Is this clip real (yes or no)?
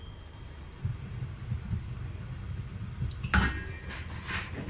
yes